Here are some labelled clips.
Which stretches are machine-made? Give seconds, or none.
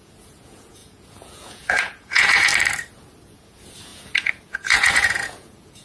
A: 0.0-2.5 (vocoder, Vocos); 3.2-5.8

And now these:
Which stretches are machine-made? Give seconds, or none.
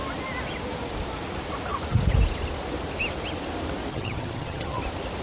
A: 3.9-4.8 (vocoder, HiFi-GAN)